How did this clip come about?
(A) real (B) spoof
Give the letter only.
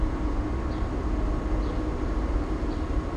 A